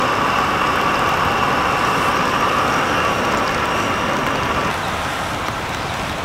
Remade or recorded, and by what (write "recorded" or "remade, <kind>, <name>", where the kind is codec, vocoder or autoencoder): recorded